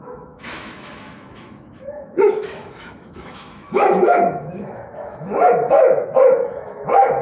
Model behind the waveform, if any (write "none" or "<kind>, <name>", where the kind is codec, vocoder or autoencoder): autoencoder, DAC-VAE